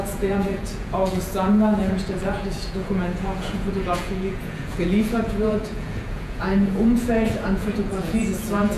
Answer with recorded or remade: remade